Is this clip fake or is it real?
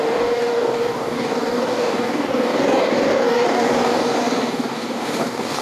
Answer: fake